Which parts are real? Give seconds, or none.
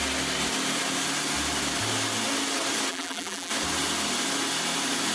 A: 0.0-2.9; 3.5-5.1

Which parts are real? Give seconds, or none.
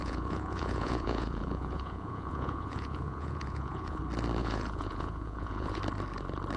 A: 4.0-4.4; 5.8-6.6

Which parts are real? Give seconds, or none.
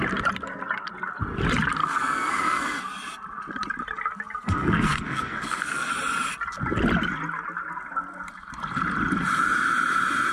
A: 0.0-1.8; 2.8-4.4; 5.9-10.3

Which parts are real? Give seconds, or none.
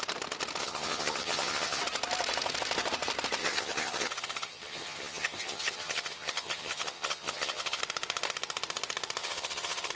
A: 0.0-0.6; 1.8-3.4; 7.8-9.2